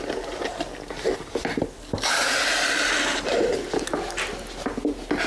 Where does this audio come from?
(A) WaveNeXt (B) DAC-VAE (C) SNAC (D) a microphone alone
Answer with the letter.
D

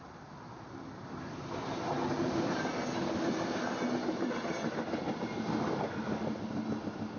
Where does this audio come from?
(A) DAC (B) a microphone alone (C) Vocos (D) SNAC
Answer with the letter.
B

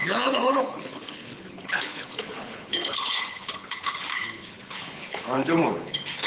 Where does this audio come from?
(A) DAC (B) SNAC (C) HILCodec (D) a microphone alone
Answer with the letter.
C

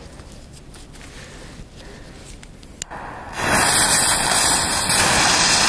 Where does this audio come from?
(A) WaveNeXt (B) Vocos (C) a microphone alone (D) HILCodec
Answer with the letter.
C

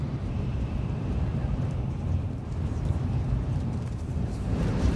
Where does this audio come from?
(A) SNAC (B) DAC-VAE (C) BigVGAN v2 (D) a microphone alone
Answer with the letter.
C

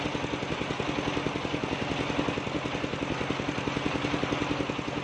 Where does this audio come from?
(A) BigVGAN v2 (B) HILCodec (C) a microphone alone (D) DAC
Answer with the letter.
C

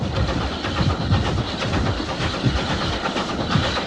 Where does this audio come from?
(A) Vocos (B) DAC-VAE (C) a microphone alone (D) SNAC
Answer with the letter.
C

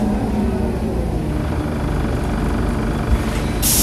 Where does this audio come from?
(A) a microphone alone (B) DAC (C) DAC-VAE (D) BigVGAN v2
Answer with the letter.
A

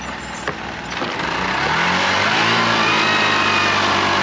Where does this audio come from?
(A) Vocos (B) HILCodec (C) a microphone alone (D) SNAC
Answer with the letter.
C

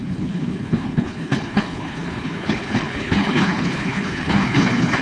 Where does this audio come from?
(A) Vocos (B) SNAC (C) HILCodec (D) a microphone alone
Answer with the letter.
C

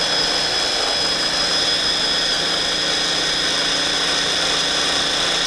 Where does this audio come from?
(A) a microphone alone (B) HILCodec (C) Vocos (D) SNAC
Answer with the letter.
A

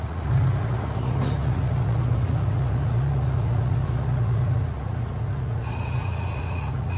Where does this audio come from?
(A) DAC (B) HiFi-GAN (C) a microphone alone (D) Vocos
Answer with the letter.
D